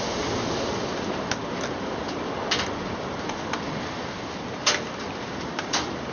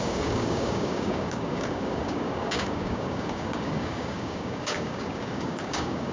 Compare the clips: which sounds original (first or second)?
first